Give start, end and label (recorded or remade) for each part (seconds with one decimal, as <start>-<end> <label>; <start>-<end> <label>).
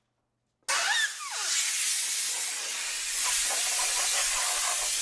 0.0-5.0 recorded